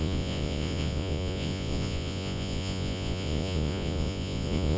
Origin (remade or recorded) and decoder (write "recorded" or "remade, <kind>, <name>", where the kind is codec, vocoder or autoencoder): remade, vocoder, Vocos